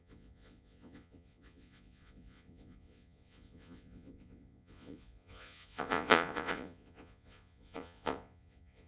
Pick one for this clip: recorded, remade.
remade